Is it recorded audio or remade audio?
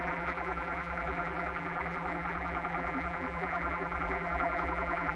remade